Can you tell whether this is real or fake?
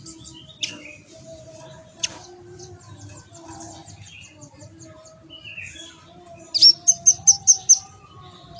real